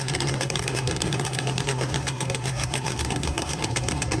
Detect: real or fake fake